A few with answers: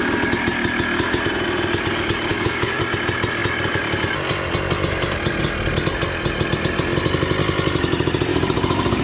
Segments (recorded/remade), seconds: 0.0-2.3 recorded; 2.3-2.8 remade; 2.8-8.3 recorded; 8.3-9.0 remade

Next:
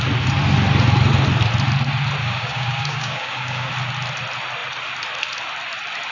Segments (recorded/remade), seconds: 0.0-2.2 recorded; 2.2-3.7 remade; 3.7-6.1 recorded

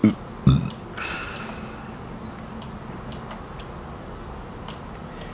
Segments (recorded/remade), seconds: 0.0-5.3 recorded

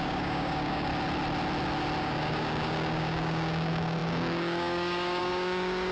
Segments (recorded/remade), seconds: 0.0-0.9 remade; 0.9-2.0 recorded; 2.0-5.9 remade

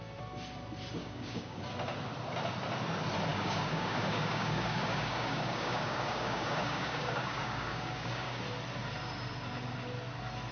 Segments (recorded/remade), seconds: 0.0-1.0 recorded; 1.0-1.7 remade; 1.7-3.3 recorded; 3.3-8.4 remade; 8.4-10.5 recorded

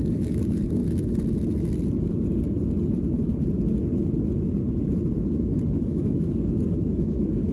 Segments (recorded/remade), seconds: 0.0-0.8 remade; 0.8-5.2 recorded; 5.2-7.5 remade